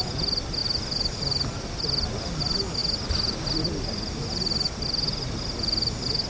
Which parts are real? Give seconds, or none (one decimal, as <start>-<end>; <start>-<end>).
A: 0.0-6.3